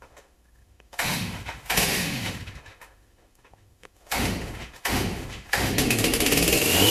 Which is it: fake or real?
fake